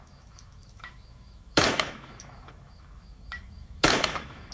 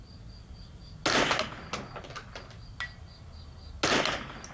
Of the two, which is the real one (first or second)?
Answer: second